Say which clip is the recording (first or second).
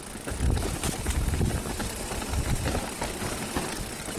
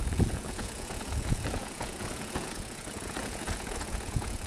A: first